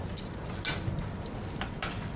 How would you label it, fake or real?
real